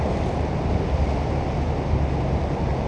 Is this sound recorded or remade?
recorded